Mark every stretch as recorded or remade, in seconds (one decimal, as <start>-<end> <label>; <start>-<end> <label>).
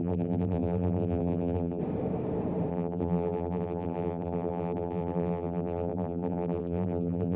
0.0-1.8 remade; 1.8-2.7 recorded; 2.7-7.4 remade